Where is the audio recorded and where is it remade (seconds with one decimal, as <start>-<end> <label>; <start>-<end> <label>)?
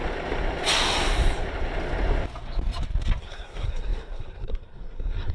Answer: 0.0-3.2 recorded; 3.2-5.3 remade